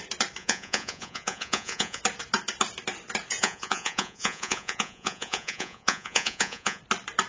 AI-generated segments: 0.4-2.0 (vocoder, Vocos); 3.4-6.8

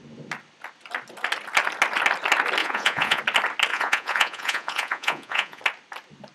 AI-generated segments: 2.6-3.2 (vocoder, Vocos); 3.7-5.6